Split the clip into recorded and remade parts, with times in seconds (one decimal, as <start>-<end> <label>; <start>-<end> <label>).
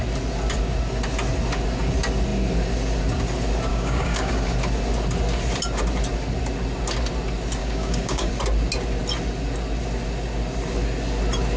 0.0-3.7 recorded; 3.7-4.3 remade; 4.3-7.6 recorded; 7.6-8.3 remade; 8.3-11.6 recorded